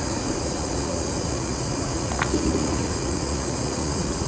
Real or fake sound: fake